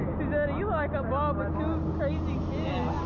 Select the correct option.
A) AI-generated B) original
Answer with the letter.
B